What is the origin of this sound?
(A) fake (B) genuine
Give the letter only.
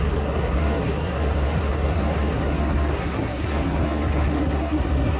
A